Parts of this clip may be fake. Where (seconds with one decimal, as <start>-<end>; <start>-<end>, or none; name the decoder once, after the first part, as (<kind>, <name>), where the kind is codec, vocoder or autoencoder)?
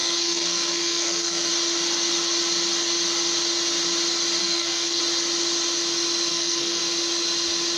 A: 0.0-1.5 (codec, SNAC); 4.4-5.0; 6.3-6.8